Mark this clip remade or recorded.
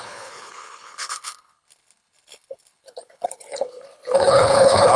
remade